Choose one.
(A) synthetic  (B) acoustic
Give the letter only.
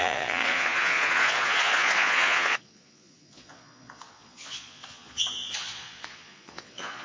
A